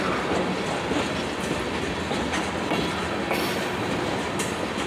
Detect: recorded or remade recorded